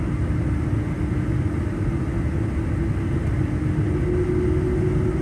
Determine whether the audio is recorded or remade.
recorded